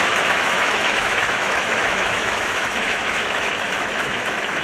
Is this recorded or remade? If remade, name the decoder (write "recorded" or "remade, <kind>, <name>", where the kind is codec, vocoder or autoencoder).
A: remade, autoencoder, DAC-VAE